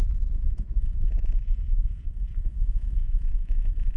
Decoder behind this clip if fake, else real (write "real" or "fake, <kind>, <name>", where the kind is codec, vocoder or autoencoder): fake, vocoder, Vocos